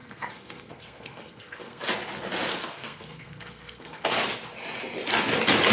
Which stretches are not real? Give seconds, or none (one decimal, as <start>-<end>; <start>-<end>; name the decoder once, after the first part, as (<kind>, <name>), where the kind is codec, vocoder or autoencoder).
0.0-1.8 (codec, SNAC); 2.5-4.1